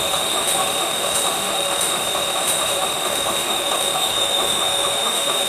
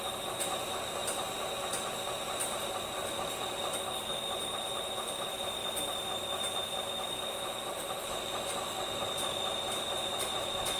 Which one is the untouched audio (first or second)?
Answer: second